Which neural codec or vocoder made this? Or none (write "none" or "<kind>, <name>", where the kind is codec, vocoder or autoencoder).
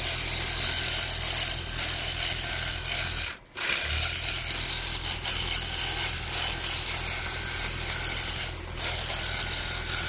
none